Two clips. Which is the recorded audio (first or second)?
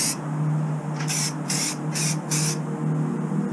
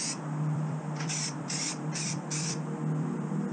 first